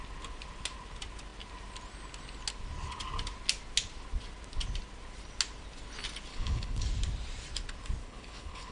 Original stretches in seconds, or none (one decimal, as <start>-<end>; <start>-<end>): 0.0-6.3; 6.8-8.0